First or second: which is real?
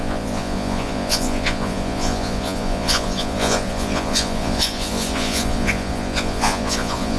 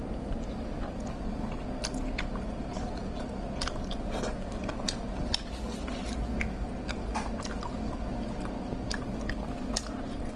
second